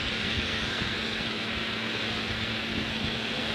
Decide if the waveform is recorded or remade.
remade